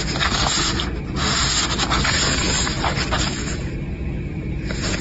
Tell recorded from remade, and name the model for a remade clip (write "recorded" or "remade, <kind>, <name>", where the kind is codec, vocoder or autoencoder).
recorded